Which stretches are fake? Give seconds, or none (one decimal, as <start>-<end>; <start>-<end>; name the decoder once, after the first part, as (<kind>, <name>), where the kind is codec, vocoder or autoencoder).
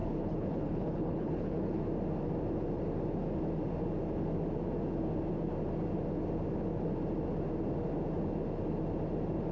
0.0-1.8 (codec, HILCodec)